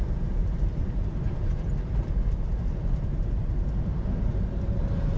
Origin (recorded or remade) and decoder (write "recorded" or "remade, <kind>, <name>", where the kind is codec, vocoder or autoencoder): remade, vocoder, BigVGAN v2